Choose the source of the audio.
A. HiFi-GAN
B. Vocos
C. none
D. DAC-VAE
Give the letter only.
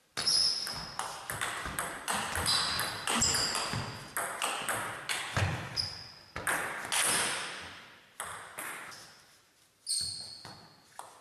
C